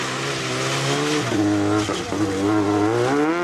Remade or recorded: recorded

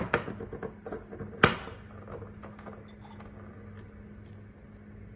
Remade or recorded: recorded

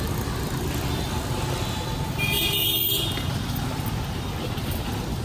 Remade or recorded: recorded